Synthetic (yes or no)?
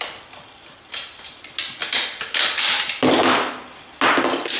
no